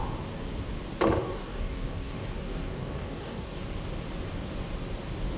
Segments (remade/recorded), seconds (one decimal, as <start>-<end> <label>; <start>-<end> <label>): 0.0-1.2 recorded; 1.2-3.6 remade; 3.6-5.4 recorded